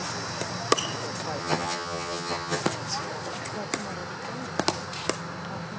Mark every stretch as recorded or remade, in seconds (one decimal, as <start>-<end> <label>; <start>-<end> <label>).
0.0-1.4 recorded; 1.4-2.6 remade; 2.6-5.8 recorded